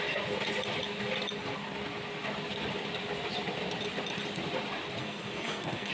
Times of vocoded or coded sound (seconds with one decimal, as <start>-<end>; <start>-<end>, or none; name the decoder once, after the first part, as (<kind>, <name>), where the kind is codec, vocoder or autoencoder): 5.0-5.9 (codec, SNAC)